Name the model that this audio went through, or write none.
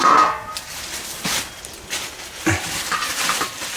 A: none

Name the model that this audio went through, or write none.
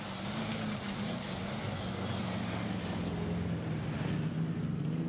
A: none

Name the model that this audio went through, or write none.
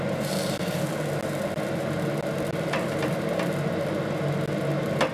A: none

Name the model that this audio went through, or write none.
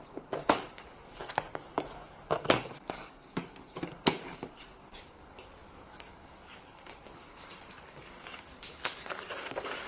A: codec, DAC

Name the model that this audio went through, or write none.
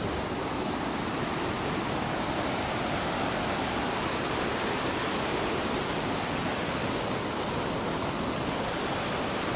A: none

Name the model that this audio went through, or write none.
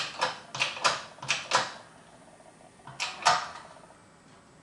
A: none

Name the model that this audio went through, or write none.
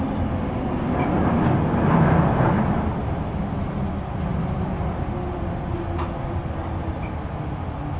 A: none